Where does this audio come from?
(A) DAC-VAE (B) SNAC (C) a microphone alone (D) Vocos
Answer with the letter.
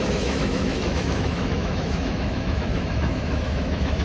A